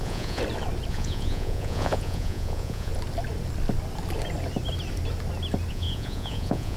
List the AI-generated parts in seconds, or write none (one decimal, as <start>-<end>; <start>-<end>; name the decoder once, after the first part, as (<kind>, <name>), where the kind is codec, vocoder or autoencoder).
0.0-0.4 (vocoder, Vocos); 0.9-2.9; 5.7-6.8